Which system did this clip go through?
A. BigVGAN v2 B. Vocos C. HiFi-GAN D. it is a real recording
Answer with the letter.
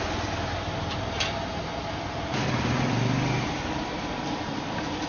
D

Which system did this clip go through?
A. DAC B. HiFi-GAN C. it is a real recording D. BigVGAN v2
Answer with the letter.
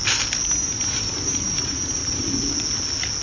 C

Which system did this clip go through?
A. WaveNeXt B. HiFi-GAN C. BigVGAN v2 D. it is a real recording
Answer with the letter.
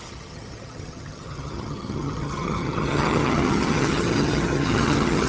B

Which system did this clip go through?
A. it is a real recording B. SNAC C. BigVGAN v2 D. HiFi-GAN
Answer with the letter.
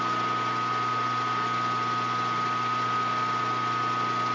A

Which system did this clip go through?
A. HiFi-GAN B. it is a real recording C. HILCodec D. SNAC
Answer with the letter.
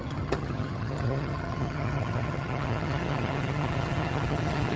A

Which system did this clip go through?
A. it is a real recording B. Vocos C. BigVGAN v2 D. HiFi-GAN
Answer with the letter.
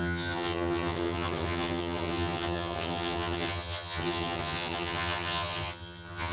D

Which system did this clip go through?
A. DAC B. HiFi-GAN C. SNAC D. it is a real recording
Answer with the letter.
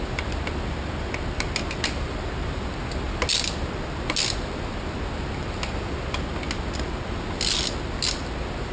D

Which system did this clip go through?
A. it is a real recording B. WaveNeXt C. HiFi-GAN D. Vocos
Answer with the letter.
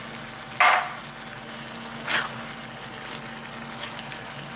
A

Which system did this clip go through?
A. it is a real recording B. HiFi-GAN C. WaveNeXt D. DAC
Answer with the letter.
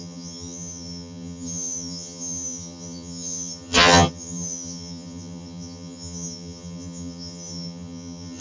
B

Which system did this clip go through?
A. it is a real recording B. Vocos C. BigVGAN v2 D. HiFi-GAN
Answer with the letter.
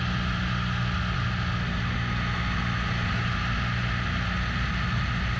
A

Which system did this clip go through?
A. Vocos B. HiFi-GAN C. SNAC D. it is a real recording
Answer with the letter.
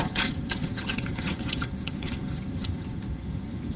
B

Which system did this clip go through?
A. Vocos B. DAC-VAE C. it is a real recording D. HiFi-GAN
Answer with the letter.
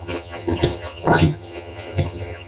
D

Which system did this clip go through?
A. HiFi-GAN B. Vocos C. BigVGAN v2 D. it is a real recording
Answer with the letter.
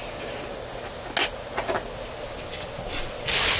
D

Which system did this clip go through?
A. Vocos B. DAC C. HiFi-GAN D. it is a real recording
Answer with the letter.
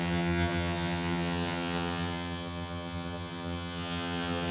C